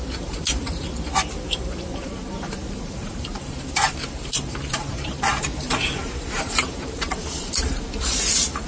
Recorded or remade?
remade